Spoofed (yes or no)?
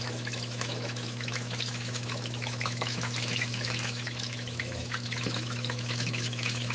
yes